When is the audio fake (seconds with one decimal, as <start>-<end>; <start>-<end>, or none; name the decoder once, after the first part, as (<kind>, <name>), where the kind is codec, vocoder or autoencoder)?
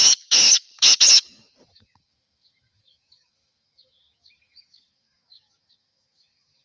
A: 0.0-6.6 (autoencoder, DAC-VAE)